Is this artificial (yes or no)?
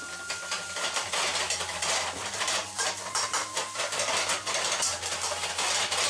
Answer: no